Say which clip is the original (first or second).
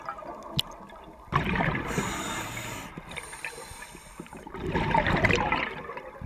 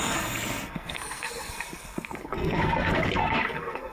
first